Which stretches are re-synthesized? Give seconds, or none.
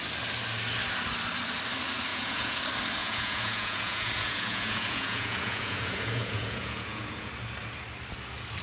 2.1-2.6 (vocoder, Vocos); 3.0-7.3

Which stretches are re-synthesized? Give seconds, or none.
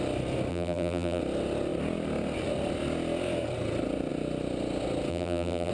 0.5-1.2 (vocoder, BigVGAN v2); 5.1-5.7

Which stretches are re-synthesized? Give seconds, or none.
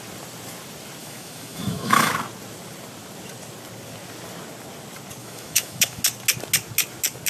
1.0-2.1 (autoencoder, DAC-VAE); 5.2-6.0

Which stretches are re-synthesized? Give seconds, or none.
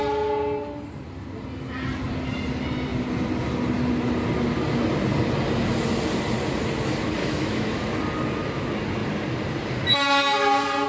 7.2-7.8 (autoencoder, DAC-VAE)